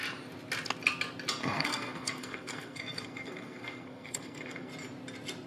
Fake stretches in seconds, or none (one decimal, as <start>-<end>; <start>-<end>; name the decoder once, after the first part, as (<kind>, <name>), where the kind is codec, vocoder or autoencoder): 1.4-4.7 (codec, SNAC)